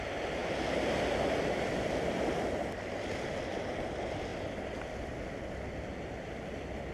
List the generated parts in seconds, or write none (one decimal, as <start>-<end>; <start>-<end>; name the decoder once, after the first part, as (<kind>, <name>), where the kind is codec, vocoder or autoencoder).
0.4-2.7 (vocoder, BigVGAN v2)